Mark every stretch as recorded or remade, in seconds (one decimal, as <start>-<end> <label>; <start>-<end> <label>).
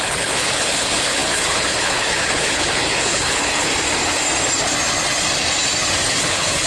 0.0-3.7 remade; 3.7-6.1 recorded; 6.1-6.7 remade